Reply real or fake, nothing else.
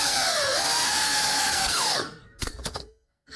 fake